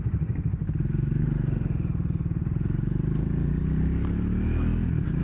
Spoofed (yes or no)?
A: no